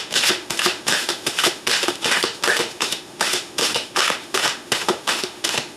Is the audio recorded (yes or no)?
no